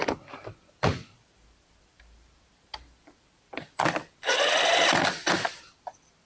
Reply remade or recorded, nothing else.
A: remade